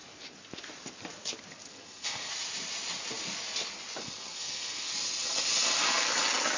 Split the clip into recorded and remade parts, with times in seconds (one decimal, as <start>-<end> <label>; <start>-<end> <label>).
0.0-1.7 recorded; 1.7-2.3 remade; 2.3-4.0 recorded; 4.0-4.9 remade; 4.9-6.6 recorded